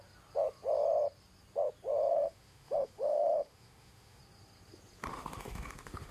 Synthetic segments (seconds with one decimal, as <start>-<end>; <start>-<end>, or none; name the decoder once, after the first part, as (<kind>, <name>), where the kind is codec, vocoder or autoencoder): 2.1-4.2 (autoencoder, DAC-VAE); 5.1-6.1